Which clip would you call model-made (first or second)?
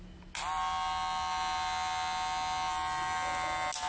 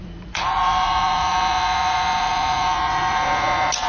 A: second